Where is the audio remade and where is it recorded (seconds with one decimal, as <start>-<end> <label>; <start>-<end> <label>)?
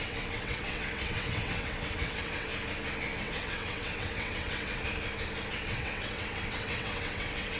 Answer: 0.0-2.5 remade; 2.5-3.2 recorded; 3.2-4.8 remade; 4.8-5.5 recorded; 5.5-7.6 remade